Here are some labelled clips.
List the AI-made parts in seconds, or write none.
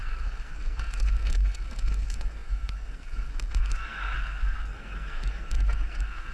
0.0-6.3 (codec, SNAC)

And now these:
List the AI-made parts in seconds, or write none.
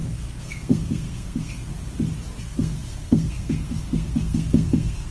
0.0-1.7 (codec, SNAC); 2.4-5.1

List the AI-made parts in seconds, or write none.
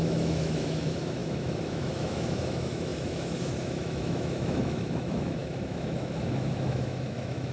0.0-7.5 (autoencoder, DAC-VAE)